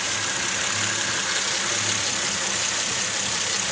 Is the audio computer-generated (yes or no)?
no